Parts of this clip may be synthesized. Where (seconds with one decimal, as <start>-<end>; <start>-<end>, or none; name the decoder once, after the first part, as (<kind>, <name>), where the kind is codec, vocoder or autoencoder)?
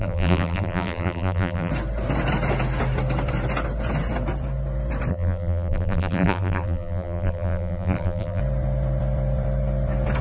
0.0-1.7 (vocoder, BigVGAN v2); 5.1-8.4